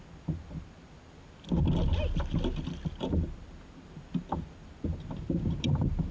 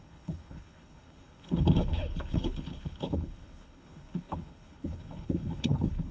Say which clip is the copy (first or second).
second